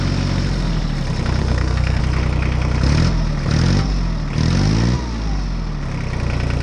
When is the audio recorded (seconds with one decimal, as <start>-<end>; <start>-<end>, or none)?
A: 0.0-1.4; 2.0-6.6